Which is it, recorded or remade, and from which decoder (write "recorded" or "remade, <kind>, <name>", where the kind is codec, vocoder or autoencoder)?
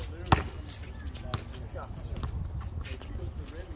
recorded